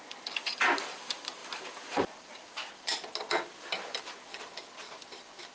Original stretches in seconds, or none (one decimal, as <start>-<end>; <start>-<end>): 0.0-5.5